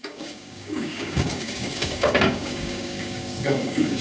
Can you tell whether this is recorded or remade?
remade